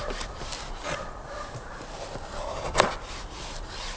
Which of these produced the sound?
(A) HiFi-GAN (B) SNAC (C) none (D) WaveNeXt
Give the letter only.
C